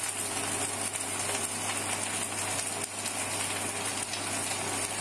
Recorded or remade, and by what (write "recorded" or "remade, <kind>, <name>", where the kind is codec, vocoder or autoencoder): recorded